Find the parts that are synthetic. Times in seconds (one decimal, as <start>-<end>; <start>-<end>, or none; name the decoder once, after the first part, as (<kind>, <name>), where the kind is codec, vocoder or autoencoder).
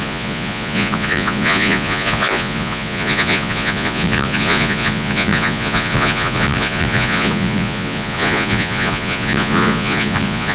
0.0-10.5 (vocoder, Vocos)